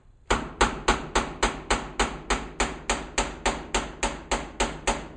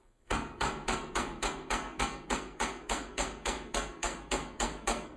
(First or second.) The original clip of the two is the first